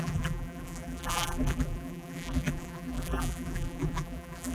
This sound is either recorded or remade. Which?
remade